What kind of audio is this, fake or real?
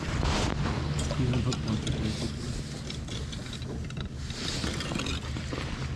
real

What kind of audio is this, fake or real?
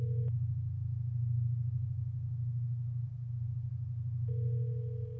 real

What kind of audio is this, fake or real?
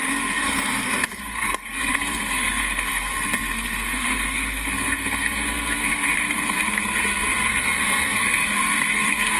fake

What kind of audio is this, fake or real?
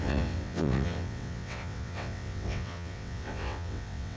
fake